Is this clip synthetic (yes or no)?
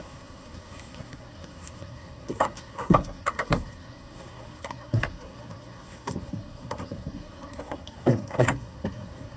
yes